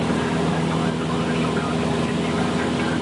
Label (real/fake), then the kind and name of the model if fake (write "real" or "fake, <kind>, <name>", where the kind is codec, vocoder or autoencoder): real